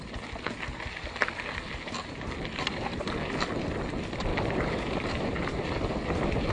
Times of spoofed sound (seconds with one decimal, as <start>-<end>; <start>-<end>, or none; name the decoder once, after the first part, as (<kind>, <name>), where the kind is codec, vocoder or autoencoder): 4.3-5.9 (vocoder, BigVGAN v2)